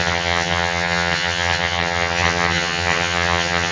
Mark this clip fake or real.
fake